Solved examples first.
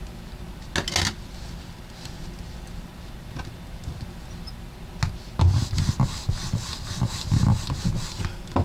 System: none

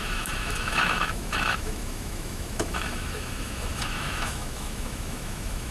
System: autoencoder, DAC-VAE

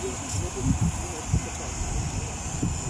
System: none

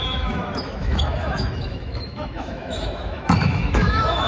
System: autoencoder, DAC-VAE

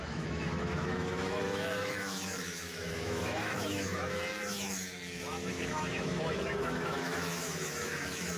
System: autoencoder, DAC-VAE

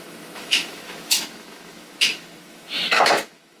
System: autoencoder, DAC-VAE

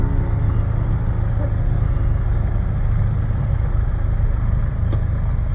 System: none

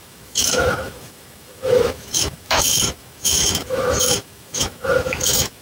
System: autoencoder, DAC-VAE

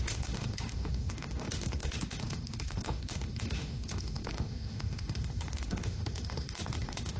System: autoencoder, DAC-VAE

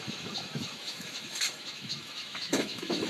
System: autoencoder, DAC-VAE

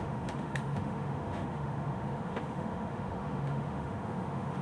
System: autoencoder, DAC-VAE